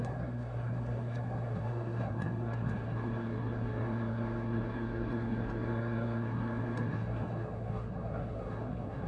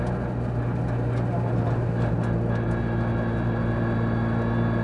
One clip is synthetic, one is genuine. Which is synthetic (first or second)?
first